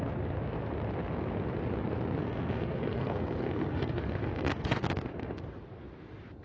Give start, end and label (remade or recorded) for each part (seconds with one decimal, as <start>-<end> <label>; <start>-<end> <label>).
0.0-2.2 recorded; 2.2-4.7 remade; 4.7-6.4 recorded